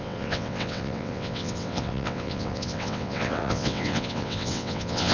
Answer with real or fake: fake